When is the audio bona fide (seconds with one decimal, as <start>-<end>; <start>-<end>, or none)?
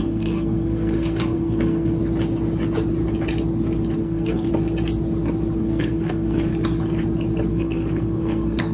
2.0-4.0; 4.5-5.6; 6.5-7.5